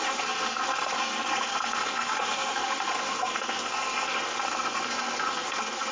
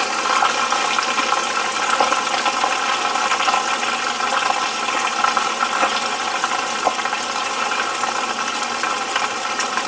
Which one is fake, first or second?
first